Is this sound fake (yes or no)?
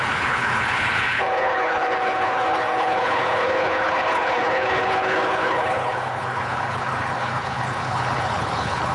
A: yes